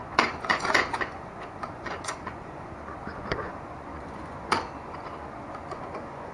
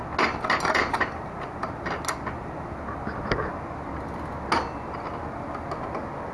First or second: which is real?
second